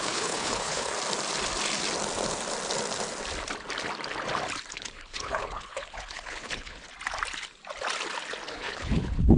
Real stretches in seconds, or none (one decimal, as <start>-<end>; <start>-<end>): 0.9-4.7; 6.9-8.5